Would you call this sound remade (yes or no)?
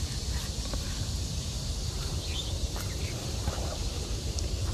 yes